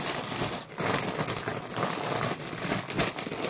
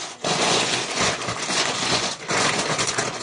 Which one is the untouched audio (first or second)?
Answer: first